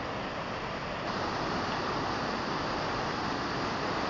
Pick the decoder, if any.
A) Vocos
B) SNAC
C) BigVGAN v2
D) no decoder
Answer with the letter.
D